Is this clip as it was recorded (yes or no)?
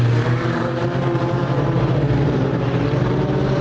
no